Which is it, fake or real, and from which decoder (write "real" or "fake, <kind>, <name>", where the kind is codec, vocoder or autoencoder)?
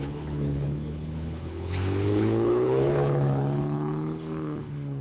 fake, codec, HILCodec